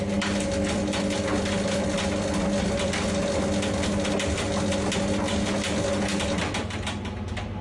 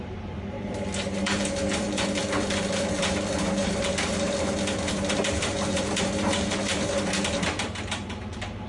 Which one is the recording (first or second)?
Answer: first